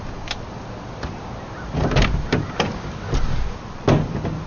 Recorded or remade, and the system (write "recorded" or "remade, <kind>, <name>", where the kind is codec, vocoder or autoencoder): recorded